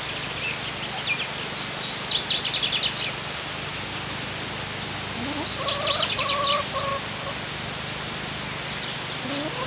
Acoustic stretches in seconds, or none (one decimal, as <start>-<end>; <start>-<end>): 0.0-9.7